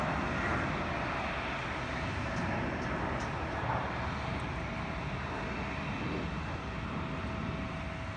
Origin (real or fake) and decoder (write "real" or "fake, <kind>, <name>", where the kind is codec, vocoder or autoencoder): real